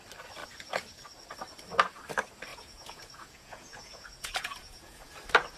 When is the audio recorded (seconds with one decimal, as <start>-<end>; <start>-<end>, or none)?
0.0-2.5; 5.1-5.6